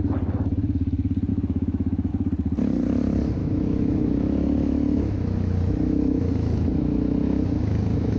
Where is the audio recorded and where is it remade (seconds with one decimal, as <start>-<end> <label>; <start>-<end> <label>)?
0.0-1.3 recorded; 1.3-2.1 remade; 2.1-3.4 recorded; 3.4-8.2 remade